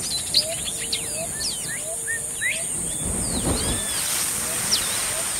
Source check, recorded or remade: recorded